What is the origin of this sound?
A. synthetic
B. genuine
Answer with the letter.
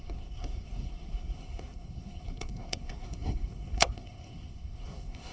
A